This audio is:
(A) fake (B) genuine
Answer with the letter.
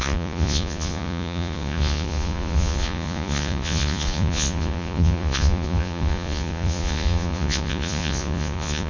A